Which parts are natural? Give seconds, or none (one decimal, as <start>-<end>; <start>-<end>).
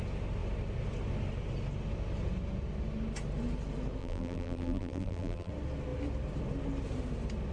0.0-4.0; 5.5-7.5